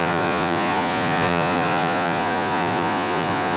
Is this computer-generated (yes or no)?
yes